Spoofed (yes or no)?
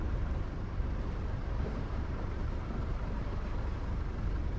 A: yes